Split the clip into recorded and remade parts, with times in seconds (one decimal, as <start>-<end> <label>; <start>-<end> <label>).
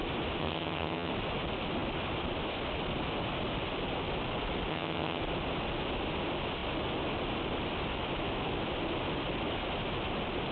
0.0-0.4 recorded; 0.4-1.1 remade; 1.1-4.7 recorded; 4.7-5.2 remade; 5.2-10.5 recorded